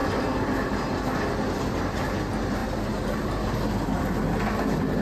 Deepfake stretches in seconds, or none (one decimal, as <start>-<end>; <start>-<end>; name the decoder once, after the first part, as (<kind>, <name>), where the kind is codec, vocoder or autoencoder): 2.6-3.5 (vocoder, BigVGAN v2)